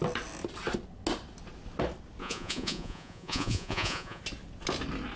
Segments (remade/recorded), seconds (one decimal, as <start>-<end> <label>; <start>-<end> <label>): 0.0-2.2 recorded; 2.2-4.2 remade; 4.2-5.2 recorded